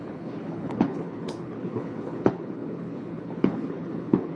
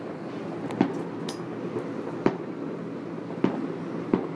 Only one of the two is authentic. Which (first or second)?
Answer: second